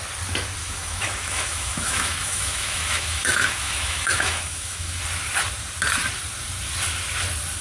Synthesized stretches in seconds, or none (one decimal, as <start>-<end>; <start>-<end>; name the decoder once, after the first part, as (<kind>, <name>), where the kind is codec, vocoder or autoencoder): 0.6-5.0 (autoencoder, DAC-VAE)